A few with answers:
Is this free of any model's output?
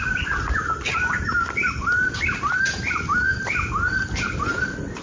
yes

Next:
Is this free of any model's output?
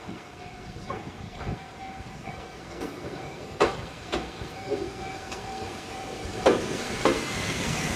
no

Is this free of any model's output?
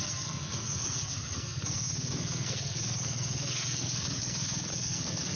no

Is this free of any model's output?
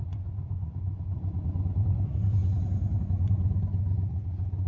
no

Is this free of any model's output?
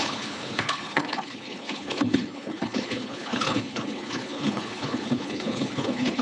no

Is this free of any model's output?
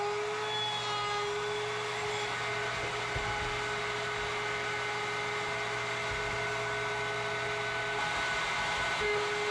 yes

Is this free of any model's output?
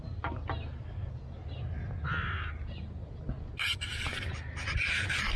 yes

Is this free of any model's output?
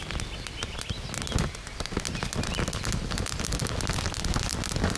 yes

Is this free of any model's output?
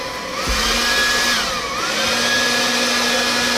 yes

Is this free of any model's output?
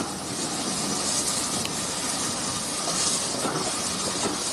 yes